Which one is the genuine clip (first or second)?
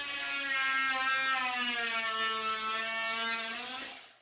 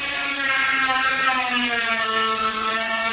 first